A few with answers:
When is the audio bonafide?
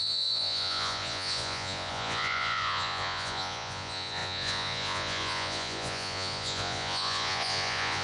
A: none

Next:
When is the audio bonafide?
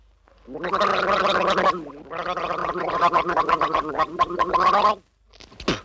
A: 0.0-2.6; 4.5-5.8